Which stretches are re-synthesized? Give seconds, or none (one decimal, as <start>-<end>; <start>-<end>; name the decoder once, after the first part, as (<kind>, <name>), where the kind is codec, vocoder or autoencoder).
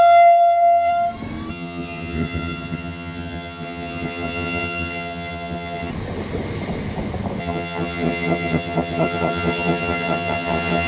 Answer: 0.0-0.9 (vocoder, HiFi-GAN); 1.5-5.9; 7.4-10.9